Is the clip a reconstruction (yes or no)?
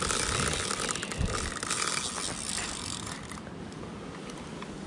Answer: no